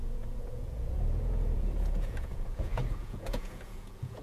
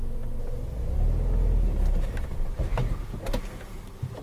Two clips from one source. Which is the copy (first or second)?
first